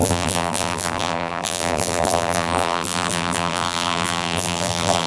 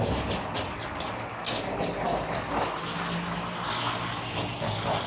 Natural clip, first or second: second